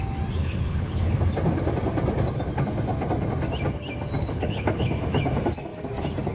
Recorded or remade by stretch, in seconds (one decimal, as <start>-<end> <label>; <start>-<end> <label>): 0.0-0.4 recorded; 0.4-1.2 remade; 1.2-4.2 recorded; 4.2-5.0 remade; 5.0-6.3 recorded